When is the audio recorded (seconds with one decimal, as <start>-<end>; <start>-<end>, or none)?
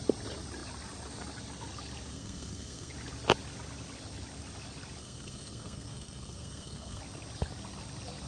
0.0-2.1; 2.9-5.0; 7.0-8.3